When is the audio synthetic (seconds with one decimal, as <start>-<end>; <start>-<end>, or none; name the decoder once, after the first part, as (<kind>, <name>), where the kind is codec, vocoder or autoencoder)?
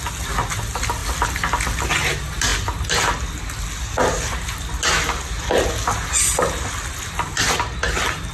none